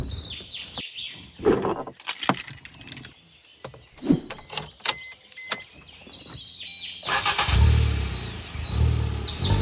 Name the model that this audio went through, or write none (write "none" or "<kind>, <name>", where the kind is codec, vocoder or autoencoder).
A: none